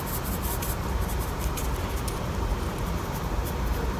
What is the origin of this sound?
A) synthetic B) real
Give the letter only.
A